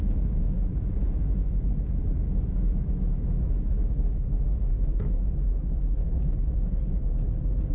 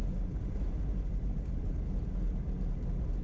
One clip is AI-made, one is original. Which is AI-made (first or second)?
first